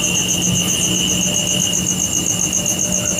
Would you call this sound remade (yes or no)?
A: no